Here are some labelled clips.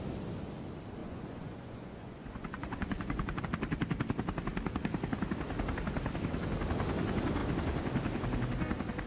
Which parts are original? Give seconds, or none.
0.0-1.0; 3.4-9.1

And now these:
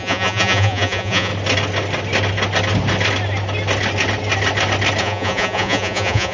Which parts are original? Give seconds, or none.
1.3-5.0

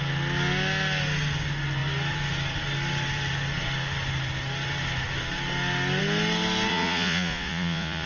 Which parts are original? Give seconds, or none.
0.0-6.7

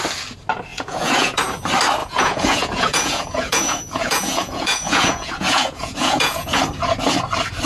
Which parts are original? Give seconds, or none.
0.0-0.7; 1.4-2.0; 6.6-7.7

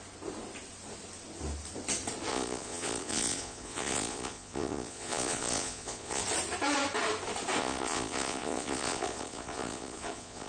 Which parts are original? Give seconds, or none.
0.0-2.3; 6.2-7.6